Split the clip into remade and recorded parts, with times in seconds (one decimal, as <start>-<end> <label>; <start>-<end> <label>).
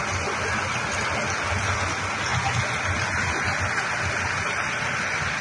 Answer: 0.0-5.4 recorded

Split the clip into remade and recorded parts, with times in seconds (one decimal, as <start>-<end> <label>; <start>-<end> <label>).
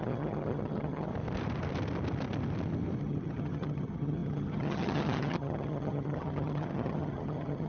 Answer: 0.0-1.1 remade; 1.1-3.0 recorded; 3.0-7.7 remade